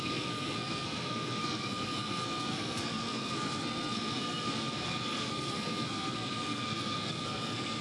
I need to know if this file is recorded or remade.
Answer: remade